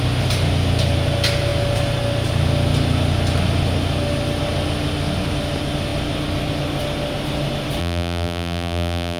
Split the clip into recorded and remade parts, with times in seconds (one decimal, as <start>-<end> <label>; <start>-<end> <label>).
0.0-7.8 recorded; 7.8-9.2 remade